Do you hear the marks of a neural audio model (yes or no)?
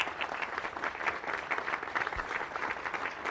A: yes